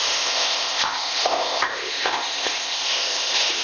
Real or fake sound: fake